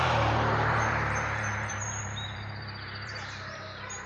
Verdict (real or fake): fake